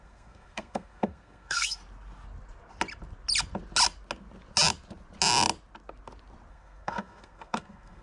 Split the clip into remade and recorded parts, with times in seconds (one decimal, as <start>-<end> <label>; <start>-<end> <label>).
0.0-1.8 remade; 1.8-6.5 recorded; 6.5-8.0 remade